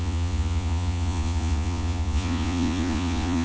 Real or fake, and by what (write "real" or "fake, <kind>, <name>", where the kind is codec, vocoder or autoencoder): fake, vocoder, Vocos